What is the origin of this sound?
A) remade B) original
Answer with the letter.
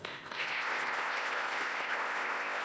A